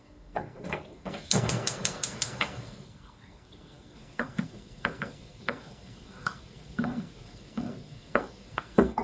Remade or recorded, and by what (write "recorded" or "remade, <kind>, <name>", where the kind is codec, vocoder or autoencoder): remade, codec, SNAC